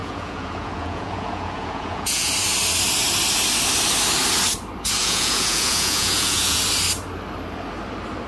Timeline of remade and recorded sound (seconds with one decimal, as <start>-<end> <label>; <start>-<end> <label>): 0.0-2.3 remade; 2.3-5.0 recorded; 5.0-6.6 remade; 6.6-8.3 recorded